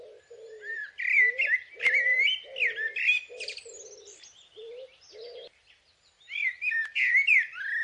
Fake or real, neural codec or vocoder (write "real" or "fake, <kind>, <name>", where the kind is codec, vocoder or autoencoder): real